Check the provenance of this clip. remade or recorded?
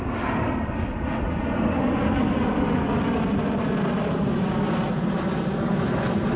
recorded